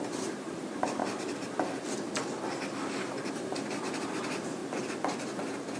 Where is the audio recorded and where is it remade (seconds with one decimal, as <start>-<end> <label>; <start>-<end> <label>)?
0.0-1.0 remade; 1.0-3.3 recorded; 3.3-4.6 remade; 4.6-5.8 recorded